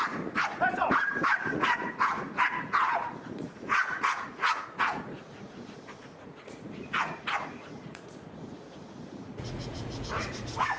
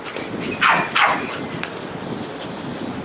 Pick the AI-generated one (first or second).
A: first